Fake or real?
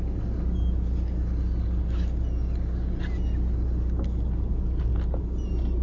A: real